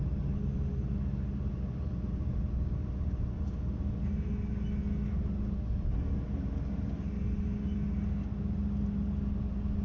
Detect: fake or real real